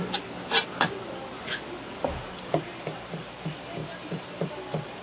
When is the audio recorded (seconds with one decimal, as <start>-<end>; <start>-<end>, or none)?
0.0-3.8; 4.3-5.0